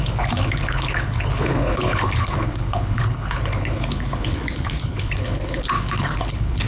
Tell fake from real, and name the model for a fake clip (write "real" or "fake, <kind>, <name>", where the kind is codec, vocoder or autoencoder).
fake, codec, HILCodec